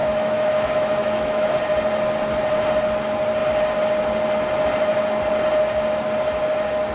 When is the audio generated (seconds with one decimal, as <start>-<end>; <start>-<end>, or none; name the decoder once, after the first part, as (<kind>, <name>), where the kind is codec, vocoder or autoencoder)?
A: 0.0-1.5 (autoencoder, DAC-VAE)